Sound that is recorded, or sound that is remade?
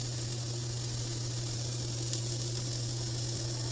recorded